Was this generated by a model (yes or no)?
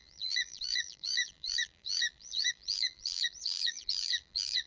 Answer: yes